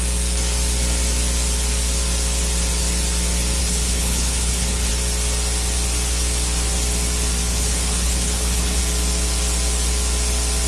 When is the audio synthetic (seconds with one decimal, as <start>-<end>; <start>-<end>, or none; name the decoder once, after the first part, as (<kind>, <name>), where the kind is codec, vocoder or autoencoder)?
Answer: 3.6-4.9 (codec, HILCodec); 7.5-8.8